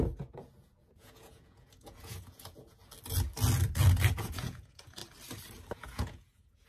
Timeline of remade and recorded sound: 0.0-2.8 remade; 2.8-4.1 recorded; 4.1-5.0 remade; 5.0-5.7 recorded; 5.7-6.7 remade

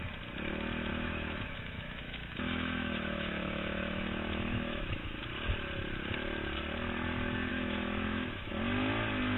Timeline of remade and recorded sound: 0.0-0.9 recorded; 0.9-5.2 remade; 5.2-7.5 recorded; 7.5-8.5 remade; 8.5-9.4 recorded

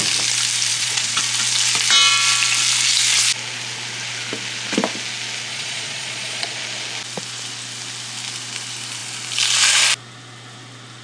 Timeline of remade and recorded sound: 0.0-0.7 recorded; 0.7-1.2 remade; 1.2-5.5 recorded; 5.5-6.6 remade; 6.6-11.0 recorded

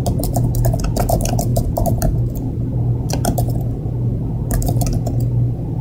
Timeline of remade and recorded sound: 0.0-1.5 recorded; 1.5-2.2 remade; 2.2-5.8 recorded

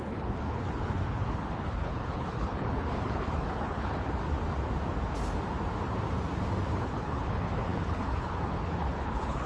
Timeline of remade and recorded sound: 0.0-4.2 remade; 4.2-6.7 recorded; 6.7-9.5 remade

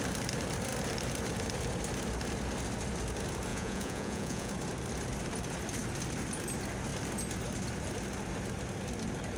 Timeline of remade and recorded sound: 0.0-3.5 recorded; 3.5-4.5 remade; 4.5-9.4 recorded